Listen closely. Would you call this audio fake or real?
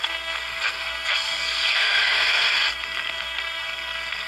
fake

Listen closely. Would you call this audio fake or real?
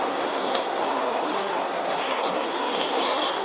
fake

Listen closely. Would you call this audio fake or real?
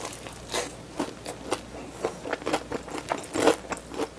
real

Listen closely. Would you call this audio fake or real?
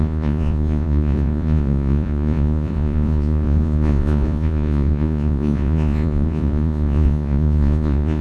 fake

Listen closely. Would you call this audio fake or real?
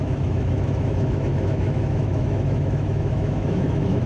fake